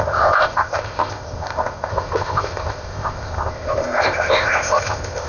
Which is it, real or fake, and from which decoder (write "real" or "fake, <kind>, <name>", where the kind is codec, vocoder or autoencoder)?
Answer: fake, codec, ZipCodec